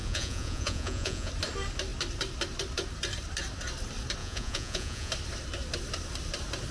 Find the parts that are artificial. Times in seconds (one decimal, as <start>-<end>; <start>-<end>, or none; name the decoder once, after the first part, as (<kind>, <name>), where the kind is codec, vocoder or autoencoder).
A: 0.0-1.3 (vocoder, Vocos); 4.2-5.1

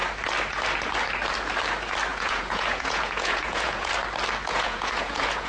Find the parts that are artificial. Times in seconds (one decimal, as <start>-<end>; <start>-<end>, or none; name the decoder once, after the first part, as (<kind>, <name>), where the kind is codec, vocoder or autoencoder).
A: 2.1-3.9 (vocoder, Vocos); 4.5-5.5